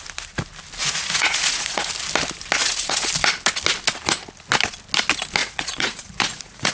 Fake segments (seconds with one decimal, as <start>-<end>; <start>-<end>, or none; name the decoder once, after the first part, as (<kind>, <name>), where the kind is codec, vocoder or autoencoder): 0.8-1.9 (vocoder, Vocos); 2.6-3.1; 5.4-6.7